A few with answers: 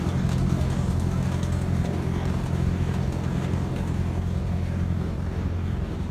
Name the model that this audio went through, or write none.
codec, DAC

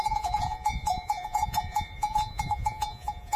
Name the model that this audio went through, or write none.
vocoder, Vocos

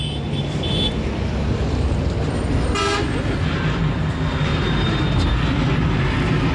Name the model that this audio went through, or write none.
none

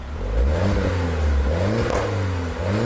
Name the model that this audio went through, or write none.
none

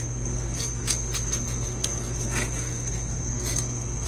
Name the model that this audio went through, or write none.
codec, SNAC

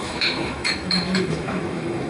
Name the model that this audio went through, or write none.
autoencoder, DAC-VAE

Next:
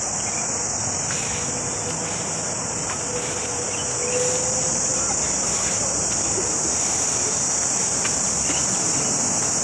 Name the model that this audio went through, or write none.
none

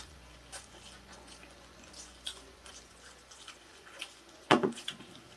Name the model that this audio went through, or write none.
vocoder, Vocos